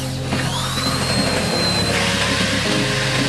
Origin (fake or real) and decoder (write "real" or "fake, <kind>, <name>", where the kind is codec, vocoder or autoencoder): real